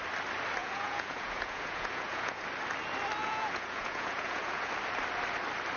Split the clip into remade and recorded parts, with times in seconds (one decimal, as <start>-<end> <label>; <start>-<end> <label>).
0.0-0.6 recorded; 0.6-2.4 remade; 2.4-3.2 recorded; 3.2-4.7 remade; 4.7-5.8 recorded